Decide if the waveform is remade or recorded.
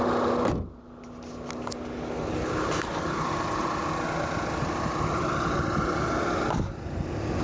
recorded